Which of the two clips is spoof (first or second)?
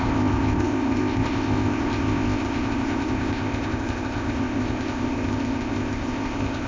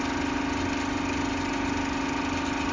first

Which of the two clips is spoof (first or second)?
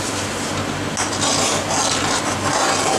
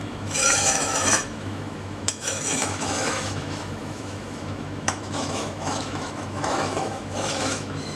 second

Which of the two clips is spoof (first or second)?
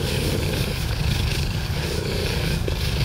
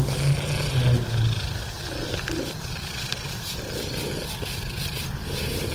first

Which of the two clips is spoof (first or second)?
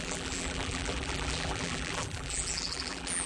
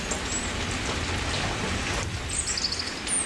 first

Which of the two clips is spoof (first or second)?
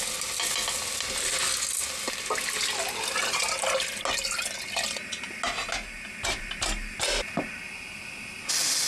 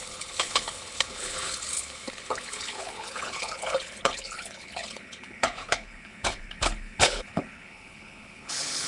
second